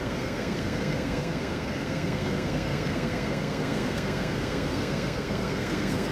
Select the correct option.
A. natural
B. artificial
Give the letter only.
B